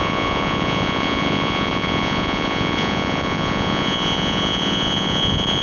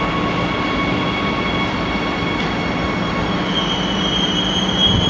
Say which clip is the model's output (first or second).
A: first